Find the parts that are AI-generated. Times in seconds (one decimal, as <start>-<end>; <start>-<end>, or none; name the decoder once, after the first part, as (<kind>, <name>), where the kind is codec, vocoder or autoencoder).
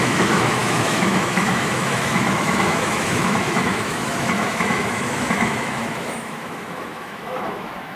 0.0-8.0 (autoencoder, DAC-VAE)